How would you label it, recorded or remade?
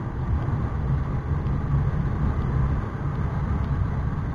recorded